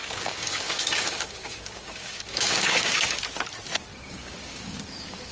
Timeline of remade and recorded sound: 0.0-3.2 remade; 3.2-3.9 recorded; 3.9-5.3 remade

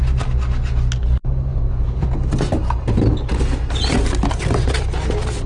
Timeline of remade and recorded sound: 0.0-1.5 recorded; 1.5-2.1 remade; 2.1-5.5 recorded